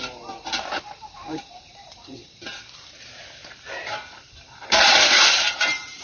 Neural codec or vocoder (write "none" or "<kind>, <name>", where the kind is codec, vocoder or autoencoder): vocoder, BigVGAN v2